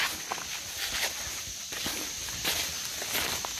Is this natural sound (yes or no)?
yes